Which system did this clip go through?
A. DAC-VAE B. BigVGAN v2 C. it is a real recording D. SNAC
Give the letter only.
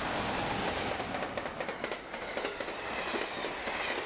C